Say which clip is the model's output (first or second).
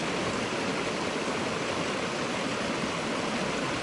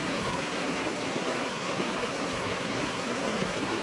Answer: second